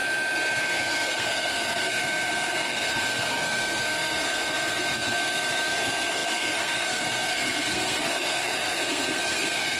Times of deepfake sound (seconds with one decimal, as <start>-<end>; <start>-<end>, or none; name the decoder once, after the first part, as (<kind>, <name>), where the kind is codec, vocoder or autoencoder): 0.6-9.8 (codec, SNAC)